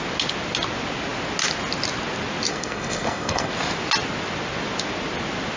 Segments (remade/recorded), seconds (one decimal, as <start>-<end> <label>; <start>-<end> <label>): 0.0-2.5 recorded; 2.5-3.5 remade; 3.5-5.6 recorded